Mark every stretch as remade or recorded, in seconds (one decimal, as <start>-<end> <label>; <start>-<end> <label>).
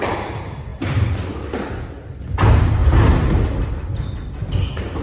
0.0-5.0 recorded